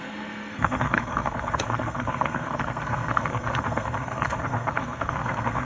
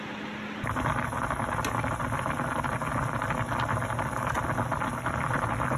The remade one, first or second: first